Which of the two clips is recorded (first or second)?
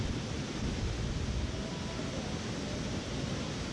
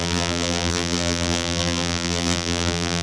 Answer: first